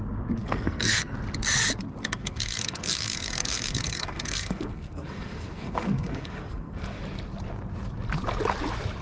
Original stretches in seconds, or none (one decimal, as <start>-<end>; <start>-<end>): 0.0-0.4; 1.1-2.0; 7.0-9.0